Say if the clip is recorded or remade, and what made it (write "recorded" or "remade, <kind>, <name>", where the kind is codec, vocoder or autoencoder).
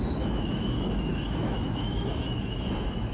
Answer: remade, autoencoder, DAC-VAE